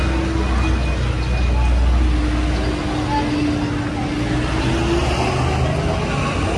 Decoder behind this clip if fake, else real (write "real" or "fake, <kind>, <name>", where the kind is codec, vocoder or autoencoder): real